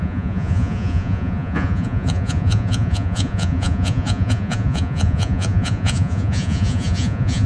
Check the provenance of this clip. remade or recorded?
remade